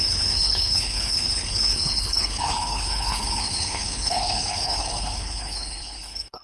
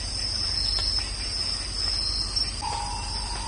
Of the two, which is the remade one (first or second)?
first